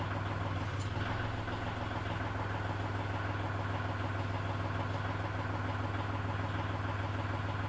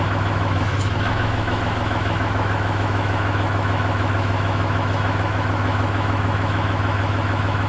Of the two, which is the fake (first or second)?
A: second